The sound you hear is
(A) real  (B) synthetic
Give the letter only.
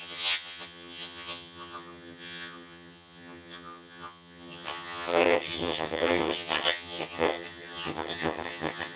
B